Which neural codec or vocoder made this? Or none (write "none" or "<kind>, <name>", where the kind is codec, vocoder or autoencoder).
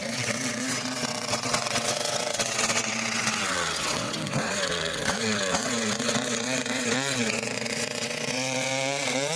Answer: vocoder, WaveNeXt